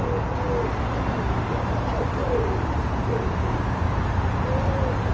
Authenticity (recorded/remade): recorded